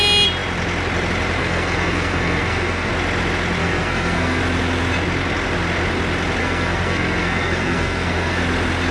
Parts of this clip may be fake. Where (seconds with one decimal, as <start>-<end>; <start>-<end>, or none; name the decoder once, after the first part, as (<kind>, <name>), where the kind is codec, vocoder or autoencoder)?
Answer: 1.4-2.9 (codec, SNAC); 3.6-4.4; 6.4-8.4